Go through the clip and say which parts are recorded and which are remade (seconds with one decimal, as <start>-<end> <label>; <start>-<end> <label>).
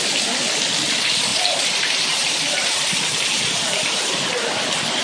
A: 0.0-1.3 recorded; 1.3-4.3 remade; 4.3-5.0 recorded